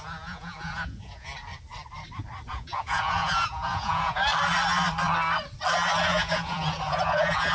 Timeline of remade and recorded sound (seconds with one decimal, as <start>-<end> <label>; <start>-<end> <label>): 0.0-1.3 remade; 1.3-2.5 recorded; 2.5-4.3 remade; 4.3-6.0 recorded; 6.0-7.5 remade